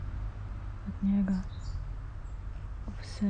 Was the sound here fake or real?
real